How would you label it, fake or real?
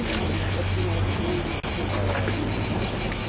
real